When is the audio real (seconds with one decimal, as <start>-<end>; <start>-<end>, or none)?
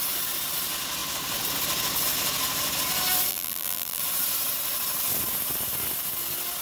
0.0-3.3; 4.0-6.6